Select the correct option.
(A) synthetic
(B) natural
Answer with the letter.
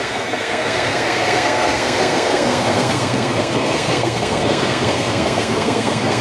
A